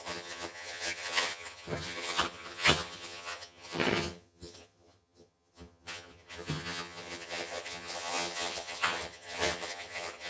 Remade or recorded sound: remade